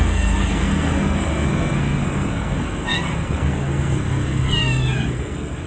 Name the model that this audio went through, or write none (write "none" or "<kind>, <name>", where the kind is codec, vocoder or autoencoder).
codec, SNAC